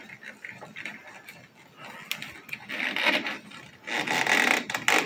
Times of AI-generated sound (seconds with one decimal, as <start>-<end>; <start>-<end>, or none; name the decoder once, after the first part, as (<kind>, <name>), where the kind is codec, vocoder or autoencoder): none